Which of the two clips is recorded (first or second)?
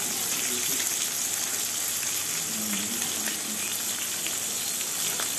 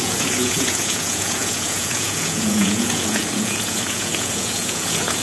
first